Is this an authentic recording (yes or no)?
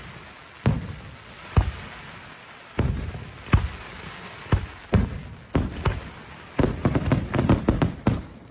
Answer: yes